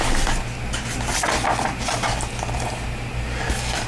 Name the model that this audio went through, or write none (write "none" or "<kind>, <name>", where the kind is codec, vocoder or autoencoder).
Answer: none